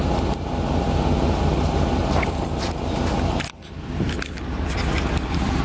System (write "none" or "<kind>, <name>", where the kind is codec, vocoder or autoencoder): none